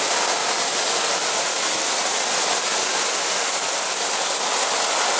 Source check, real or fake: real